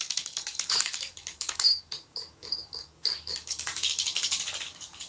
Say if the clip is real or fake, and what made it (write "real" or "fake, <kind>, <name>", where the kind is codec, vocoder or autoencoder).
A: fake, codec, DAC